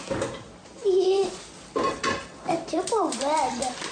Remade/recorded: remade